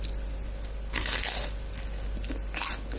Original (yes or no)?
yes